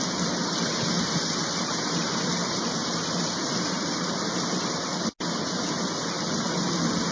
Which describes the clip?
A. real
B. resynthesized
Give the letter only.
A